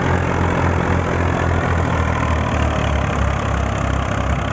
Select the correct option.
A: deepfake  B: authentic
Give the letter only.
B